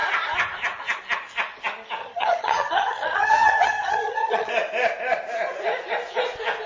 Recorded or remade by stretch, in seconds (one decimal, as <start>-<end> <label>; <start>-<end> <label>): 0.0-2.0 recorded; 2.0-4.5 remade; 4.5-6.7 recorded